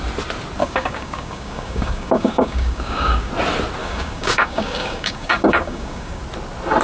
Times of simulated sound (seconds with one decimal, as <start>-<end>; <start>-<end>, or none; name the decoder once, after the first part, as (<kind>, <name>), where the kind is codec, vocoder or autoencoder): 0.6-3.3 (codec, DAC); 3.8-6.2

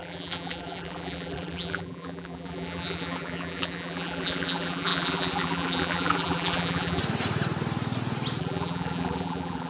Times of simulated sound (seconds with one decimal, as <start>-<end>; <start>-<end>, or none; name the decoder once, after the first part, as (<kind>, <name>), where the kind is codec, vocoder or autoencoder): 0.0-7.0 (vocoder, BigVGAN v2); 8.4-9.7

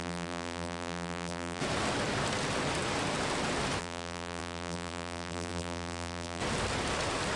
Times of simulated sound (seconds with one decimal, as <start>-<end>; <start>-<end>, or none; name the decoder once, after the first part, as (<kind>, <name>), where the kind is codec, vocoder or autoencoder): 0.0-1.6 (vocoder, BigVGAN v2); 3.8-6.4

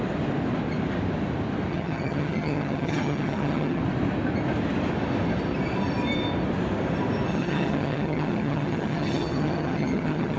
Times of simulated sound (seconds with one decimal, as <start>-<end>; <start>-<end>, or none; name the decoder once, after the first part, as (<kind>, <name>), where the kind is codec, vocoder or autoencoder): 1.7-3.8 (vocoder, HiFi-GAN); 7.3-10.4